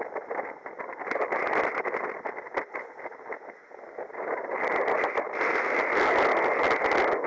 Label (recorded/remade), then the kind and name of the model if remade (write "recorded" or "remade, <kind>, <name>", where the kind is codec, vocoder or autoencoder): recorded